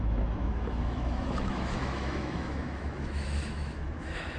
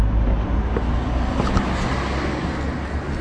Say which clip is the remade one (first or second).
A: first